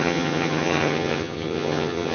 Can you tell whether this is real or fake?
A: fake